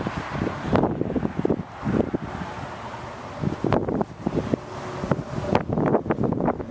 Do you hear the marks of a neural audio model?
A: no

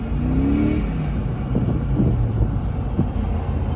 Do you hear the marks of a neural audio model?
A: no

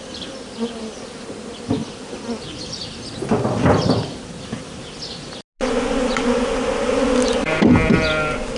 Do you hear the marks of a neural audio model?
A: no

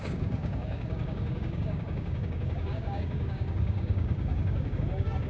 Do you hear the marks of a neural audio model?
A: yes